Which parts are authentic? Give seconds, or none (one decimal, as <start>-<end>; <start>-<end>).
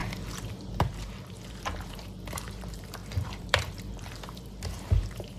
0.0-0.8